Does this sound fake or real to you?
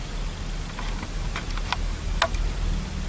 real